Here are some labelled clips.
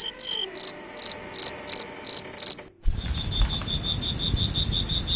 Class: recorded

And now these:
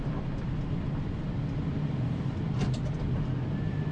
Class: recorded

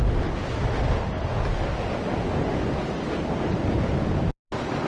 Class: recorded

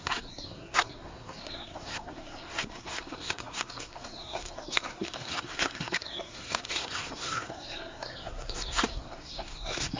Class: remade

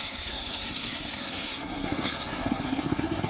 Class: remade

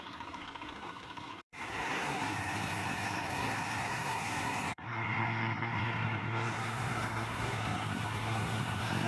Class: remade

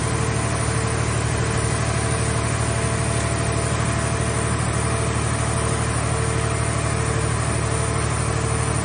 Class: recorded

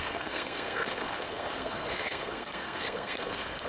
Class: remade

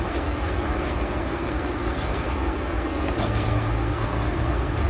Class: remade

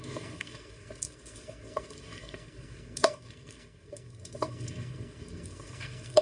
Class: remade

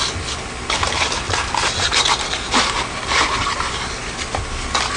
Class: recorded